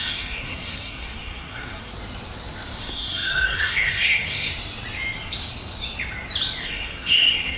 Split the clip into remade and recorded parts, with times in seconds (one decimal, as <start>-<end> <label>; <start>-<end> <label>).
0.0-1.9 remade; 1.9-2.8 recorded; 2.8-4.5 remade; 4.5-6.6 recorded; 6.6-7.6 remade